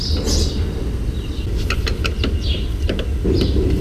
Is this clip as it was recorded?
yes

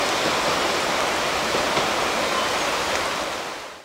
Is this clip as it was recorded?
yes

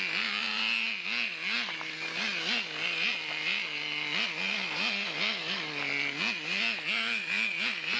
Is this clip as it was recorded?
yes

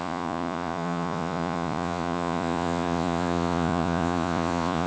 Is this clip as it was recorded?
no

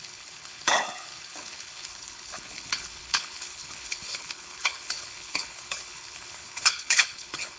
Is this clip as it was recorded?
no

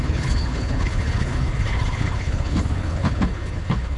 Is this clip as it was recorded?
no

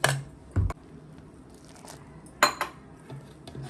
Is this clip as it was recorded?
yes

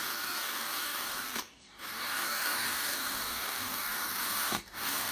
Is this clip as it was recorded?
no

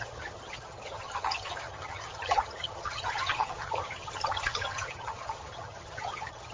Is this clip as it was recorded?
no